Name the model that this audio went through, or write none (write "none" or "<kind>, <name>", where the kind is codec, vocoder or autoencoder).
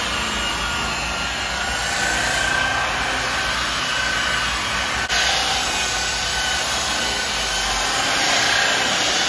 none